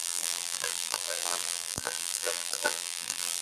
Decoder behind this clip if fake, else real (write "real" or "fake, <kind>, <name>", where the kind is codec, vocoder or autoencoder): fake, vocoder, BigVGAN v2